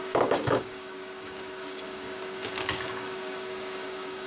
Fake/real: fake